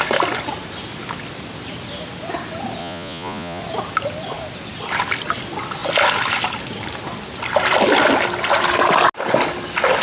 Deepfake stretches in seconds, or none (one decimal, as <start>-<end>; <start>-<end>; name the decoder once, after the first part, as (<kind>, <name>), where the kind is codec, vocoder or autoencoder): 2.8-3.6 (vocoder, Vocos)